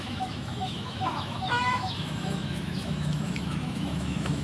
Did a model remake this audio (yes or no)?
yes